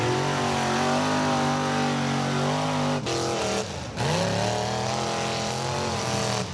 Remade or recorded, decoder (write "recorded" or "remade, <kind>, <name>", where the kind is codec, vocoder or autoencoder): recorded